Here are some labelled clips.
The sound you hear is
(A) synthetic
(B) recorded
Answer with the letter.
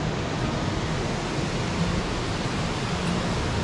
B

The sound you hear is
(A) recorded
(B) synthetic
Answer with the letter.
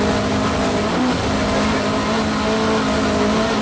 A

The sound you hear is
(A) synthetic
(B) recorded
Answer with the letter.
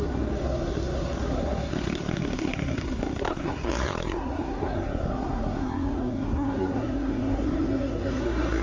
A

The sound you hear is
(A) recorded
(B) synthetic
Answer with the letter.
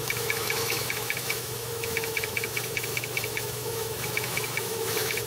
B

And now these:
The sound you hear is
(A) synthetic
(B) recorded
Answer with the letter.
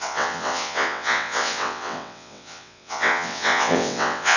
A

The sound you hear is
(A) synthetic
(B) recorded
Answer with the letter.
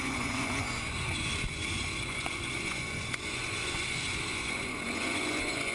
A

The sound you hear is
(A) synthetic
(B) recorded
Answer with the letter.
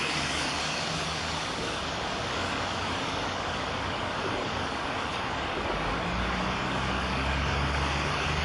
A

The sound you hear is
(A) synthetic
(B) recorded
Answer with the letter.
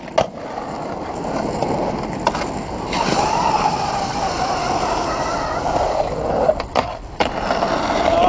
B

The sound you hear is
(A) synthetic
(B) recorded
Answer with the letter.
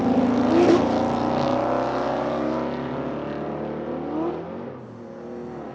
B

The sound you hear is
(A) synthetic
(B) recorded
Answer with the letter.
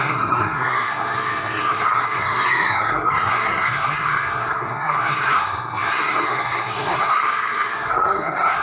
A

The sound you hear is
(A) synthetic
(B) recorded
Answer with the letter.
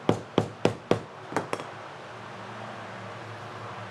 B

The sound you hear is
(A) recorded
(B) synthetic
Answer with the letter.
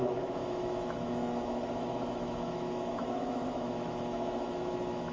B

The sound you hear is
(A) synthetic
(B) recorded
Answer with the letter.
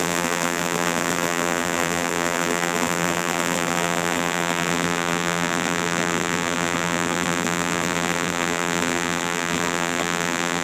A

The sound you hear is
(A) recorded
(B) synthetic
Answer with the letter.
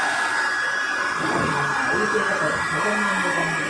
A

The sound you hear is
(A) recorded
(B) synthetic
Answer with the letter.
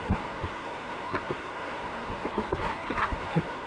B